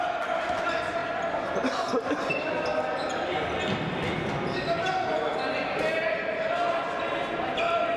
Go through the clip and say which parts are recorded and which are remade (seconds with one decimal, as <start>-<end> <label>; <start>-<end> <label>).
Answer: 0.0-8.0 recorded